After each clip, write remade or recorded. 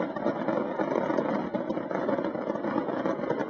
recorded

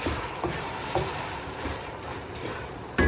remade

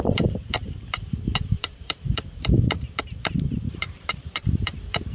remade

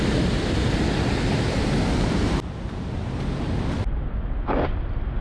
recorded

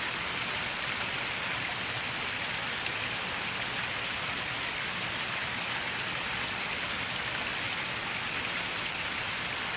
recorded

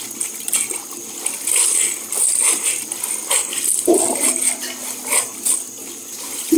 recorded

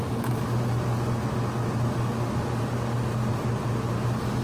recorded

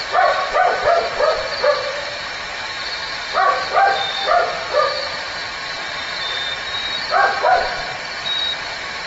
remade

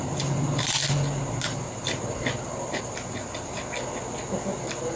recorded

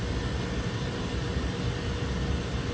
recorded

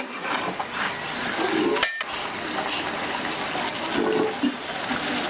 recorded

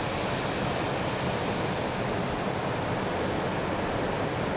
recorded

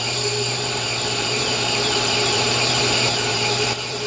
remade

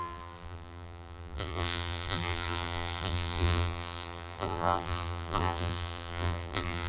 remade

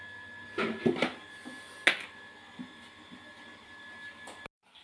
recorded